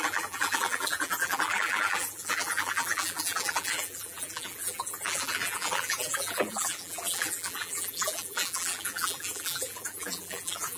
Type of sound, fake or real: fake